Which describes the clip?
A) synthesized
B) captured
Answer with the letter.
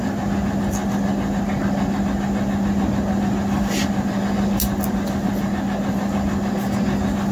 B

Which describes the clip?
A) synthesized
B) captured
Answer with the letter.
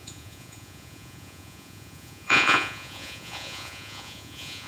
A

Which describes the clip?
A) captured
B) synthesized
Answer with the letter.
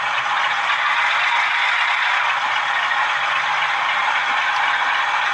A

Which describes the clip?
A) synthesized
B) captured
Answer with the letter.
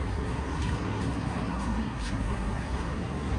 A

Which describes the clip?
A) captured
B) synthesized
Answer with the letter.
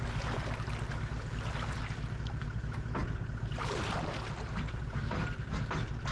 A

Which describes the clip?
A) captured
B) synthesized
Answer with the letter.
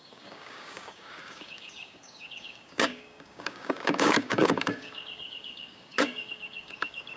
B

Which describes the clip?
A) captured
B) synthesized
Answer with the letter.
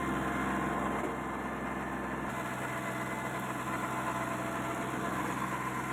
A